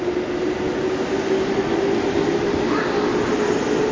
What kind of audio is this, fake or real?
real